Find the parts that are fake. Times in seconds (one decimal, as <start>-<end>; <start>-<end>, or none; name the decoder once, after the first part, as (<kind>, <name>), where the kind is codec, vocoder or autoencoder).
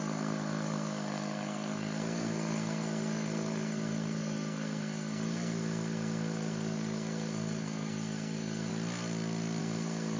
0.0-8.7 (codec, SNAC); 9.6-10.2